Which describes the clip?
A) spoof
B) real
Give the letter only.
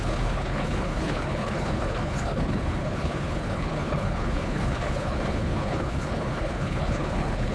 A